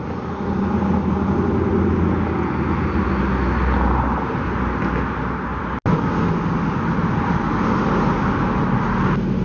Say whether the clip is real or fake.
real